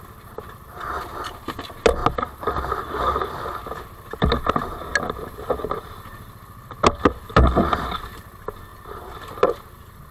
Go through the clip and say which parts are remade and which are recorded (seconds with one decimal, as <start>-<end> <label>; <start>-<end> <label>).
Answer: 0.0-10.1 recorded

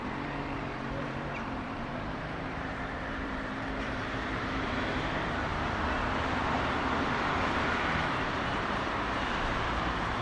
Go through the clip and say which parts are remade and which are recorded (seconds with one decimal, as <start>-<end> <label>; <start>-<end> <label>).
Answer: 0.0-5.5 remade; 5.5-6.8 recorded; 6.8-10.2 remade